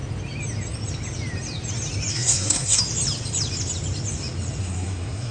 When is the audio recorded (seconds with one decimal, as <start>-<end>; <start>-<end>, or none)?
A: 0.0-2.1; 2.8-4.6